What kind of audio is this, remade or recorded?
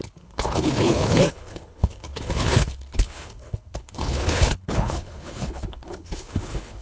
remade